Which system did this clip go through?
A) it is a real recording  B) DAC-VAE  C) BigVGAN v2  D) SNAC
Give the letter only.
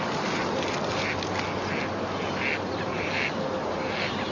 A